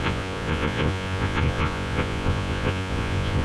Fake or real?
fake